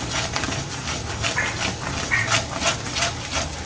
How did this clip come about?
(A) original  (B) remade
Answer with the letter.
A